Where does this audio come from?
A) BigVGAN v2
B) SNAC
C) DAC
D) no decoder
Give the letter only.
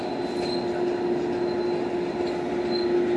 D